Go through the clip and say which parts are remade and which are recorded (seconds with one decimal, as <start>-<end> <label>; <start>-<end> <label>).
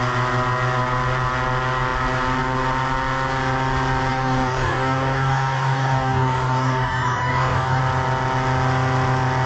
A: 0.0-4.1 recorded; 4.1-7.8 remade; 7.8-9.5 recorded